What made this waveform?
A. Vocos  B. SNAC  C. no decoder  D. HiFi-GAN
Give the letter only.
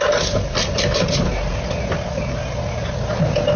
C